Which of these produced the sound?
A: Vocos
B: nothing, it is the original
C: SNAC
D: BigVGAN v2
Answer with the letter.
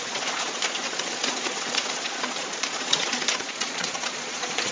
A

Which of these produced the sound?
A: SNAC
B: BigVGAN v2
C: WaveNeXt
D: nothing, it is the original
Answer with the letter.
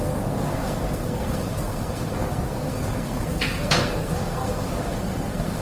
A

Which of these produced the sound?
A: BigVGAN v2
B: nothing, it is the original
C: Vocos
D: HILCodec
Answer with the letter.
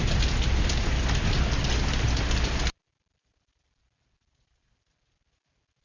B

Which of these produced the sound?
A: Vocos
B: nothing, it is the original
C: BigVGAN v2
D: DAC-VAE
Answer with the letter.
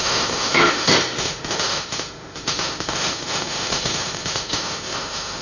D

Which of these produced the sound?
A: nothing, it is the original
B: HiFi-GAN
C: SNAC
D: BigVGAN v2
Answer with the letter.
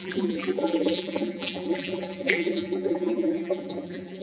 D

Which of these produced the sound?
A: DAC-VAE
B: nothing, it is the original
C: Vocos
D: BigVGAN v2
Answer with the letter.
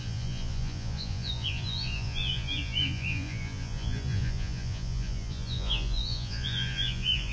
C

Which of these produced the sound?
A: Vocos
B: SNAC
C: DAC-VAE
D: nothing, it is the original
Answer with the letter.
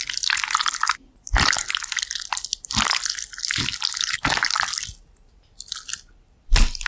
D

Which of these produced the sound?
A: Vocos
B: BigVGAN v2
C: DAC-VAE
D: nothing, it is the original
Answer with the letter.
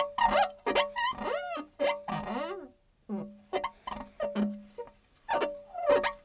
D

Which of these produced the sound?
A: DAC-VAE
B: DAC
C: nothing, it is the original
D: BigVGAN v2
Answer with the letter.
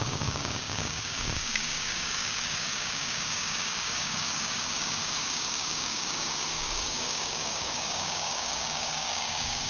B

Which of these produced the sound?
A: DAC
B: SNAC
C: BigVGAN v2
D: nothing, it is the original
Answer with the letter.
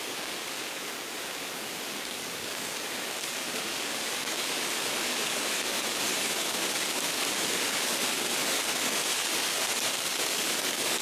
A